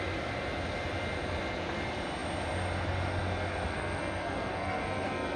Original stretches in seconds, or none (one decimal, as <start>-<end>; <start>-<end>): 0.0-3.7